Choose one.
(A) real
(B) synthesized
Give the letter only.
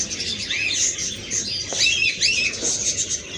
A